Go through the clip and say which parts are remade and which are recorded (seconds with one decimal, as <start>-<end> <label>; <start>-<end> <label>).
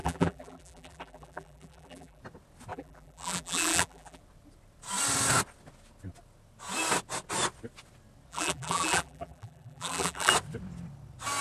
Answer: 0.0-2.2 remade; 2.2-2.7 recorded; 2.7-4.2 remade; 4.2-8.3 recorded; 8.3-10.3 remade; 10.3-11.4 recorded